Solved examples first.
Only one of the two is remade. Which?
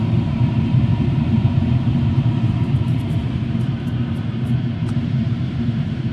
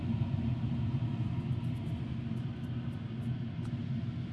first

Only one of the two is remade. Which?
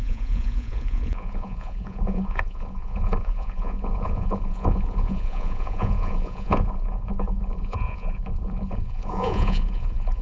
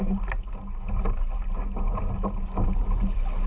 first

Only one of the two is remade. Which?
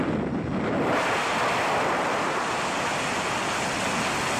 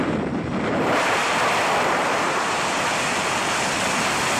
second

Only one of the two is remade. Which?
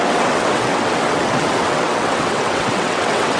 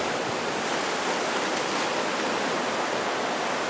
first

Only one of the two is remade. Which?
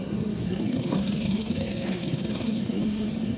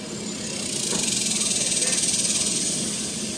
first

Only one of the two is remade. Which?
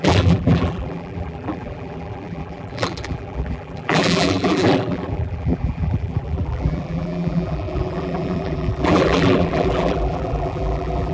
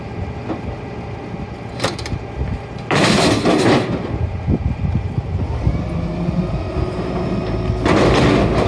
first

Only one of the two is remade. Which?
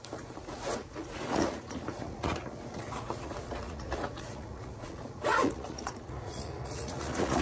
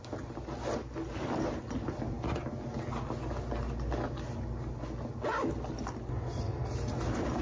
first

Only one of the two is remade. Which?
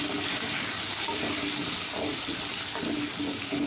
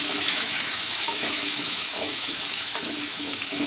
second